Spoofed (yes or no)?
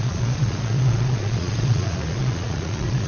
yes